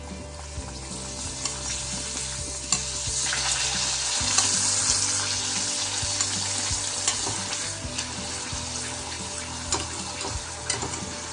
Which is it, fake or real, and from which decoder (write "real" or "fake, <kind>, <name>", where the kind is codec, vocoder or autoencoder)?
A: real